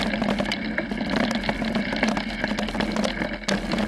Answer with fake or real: real